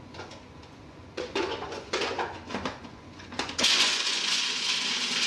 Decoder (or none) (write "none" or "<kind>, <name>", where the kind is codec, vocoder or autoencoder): vocoder, Vocos